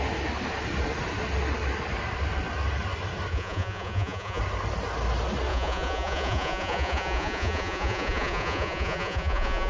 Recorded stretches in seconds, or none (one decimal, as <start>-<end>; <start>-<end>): 0.0-3.3; 4.4-5.5